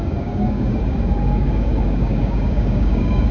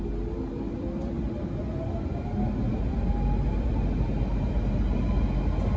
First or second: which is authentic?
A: second